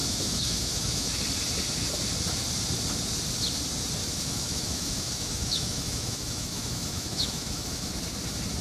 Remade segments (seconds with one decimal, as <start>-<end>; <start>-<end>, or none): 0.0-1.2; 4.0-7.9

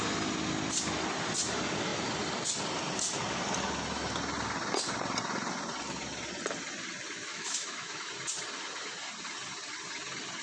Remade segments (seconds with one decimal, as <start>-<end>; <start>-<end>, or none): 7.3-8.1

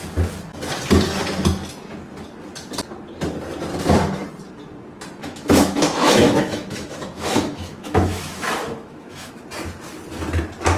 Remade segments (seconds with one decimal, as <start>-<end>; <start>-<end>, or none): 5.2-9.3

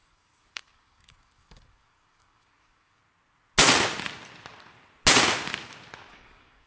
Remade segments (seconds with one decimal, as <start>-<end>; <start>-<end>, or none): 0.0-3.0; 6.1-6.7

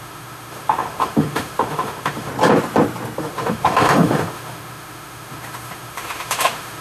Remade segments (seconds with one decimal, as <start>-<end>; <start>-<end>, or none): 0.0-2.3; 3.2-6.8